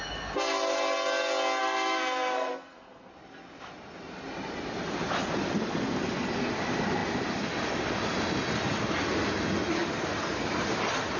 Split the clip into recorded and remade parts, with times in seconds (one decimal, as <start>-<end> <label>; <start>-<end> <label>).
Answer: 0.0-1.6 recorded; 1.6-3.1 remade; 3.1-11.2 recorded